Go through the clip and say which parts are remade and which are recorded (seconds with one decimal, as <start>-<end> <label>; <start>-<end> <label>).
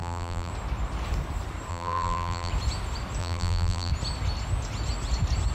0.0-0.5 remade; 0.5-1.7 recorded; 1.7-2.5 remade; 2.5-3.2 recorded; 3.2-3.9 remade; 3.9-5.5 recorded